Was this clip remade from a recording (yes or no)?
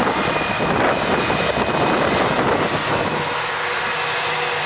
no